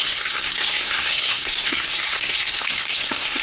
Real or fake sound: fake